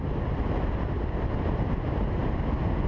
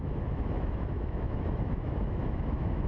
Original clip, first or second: first